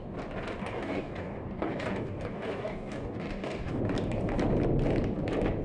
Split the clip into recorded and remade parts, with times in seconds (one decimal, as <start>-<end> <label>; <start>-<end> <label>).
0.0-0.6 recorded; 0.6-3.8 remade; 3.8-5.6 recorded